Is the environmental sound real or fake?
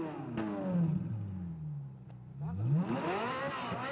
real